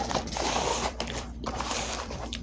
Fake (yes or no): yes